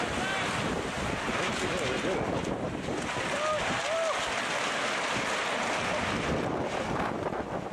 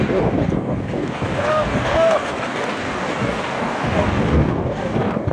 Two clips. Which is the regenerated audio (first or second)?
second